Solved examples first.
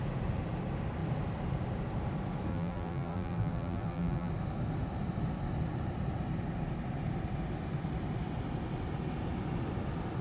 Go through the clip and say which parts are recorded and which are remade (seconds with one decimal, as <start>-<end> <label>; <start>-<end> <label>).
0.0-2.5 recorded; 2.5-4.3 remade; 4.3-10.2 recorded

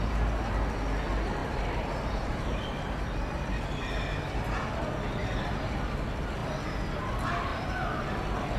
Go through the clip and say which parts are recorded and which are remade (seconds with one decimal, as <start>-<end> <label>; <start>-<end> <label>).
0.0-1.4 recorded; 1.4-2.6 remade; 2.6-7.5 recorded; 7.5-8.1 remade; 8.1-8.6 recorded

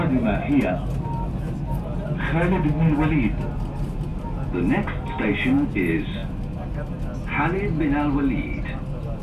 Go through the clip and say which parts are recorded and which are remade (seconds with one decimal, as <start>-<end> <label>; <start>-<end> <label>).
0.0-9.2 recorded

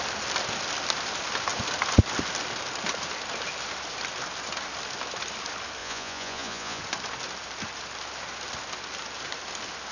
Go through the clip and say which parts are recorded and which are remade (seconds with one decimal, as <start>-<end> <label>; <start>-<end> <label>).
0.0-5.8 recorded; 5.8-6.8 remade; 6.8-9.9 recorded

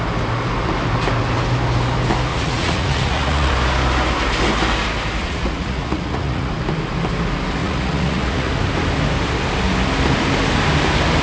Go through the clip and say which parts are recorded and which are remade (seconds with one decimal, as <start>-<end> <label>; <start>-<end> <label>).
0.0-2.3 recorded; 2.3-3.5 remade; 3.5-5.2 recorded; 5.2-6.5 remade; 6.5-7.6 recorded; 7.6-8.5 remade; 8.5-11.2 recorded

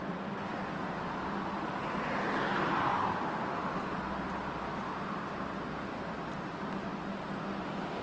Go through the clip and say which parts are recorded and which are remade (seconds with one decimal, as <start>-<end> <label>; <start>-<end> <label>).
0.0-8.0 recorded